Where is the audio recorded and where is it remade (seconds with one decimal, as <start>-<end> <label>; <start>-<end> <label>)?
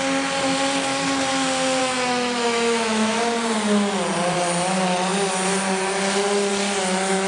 0.0-1.8 recorded; 1.8-3.2 remade; 3.2-7.3 recorded